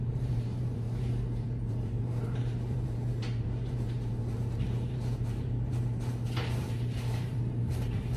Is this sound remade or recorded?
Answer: remade